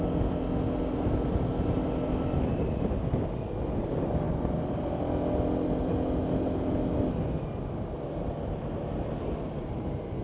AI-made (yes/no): no